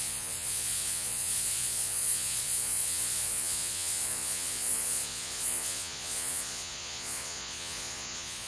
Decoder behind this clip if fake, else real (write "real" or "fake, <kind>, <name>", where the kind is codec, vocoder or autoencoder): fake, vocoder, Vocos